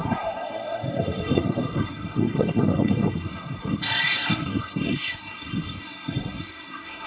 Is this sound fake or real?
fake